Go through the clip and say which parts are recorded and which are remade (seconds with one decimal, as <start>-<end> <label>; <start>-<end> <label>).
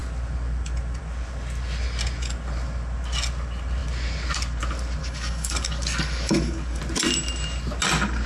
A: 0.0-5.0 recorded; 5.0-6.8 remade; 6.8-8.3 recorded